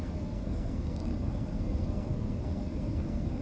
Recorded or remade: remade